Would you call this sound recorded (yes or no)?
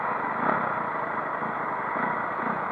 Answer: yes